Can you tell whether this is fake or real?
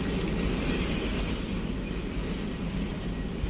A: real